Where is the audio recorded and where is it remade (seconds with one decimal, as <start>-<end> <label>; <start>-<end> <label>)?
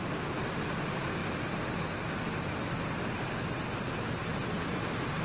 0.0-5.2 recorded